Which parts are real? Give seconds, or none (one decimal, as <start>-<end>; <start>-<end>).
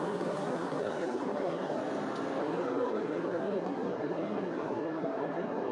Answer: 1.8-2.4